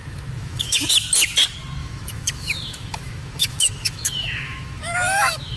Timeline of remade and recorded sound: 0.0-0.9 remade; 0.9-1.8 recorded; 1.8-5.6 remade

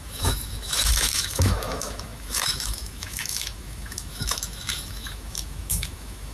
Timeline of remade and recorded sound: 0.0-6.3 remade

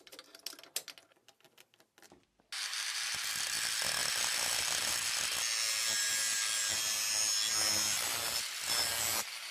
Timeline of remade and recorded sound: 0.0-9.5 recorded